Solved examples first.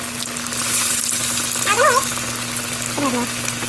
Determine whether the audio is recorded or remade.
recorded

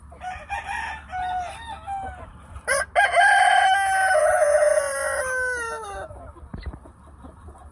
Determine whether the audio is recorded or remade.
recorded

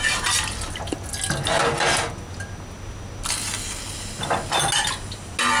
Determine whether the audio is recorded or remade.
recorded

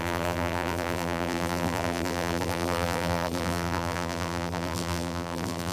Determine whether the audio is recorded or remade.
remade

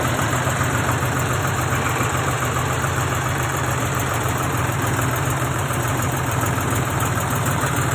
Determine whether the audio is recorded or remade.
remade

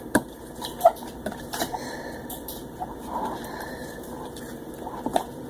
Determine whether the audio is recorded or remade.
remade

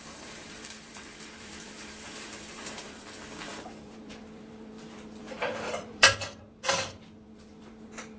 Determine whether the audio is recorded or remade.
remade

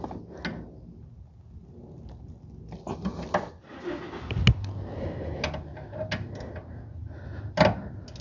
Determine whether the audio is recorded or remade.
recorded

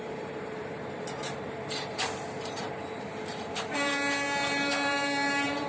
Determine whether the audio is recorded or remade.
remade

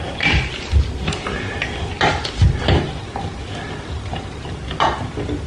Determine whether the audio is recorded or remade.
recorded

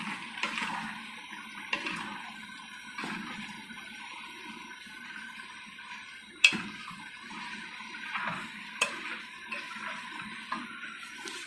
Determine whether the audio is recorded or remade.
remade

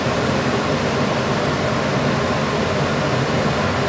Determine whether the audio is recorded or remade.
recorded